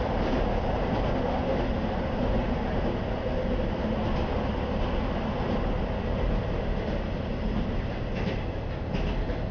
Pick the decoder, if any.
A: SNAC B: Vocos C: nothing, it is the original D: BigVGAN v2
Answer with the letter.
C